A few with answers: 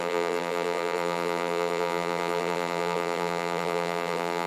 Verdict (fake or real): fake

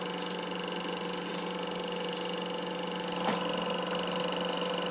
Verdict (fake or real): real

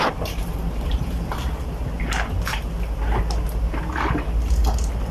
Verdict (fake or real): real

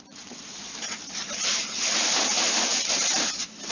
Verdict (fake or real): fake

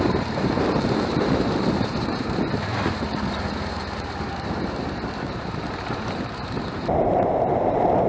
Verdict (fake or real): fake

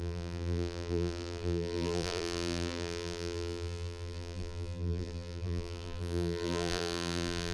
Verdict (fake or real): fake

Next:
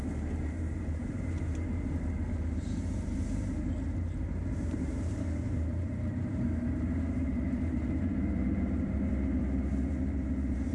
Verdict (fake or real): fake